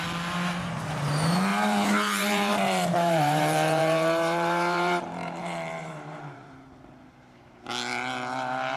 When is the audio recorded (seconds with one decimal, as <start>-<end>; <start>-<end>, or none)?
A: 0.0-1.5; 6.5-8.8